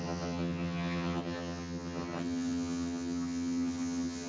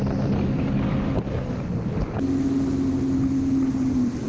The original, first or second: second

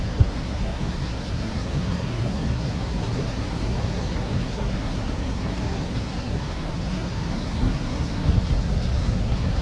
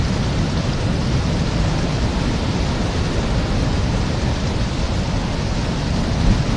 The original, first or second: second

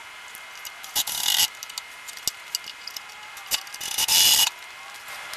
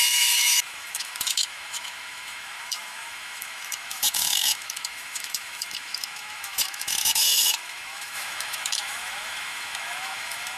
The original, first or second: first